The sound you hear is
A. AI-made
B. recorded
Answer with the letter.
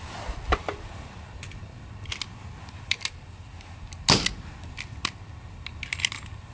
B